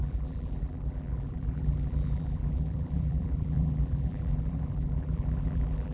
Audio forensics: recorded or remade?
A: remade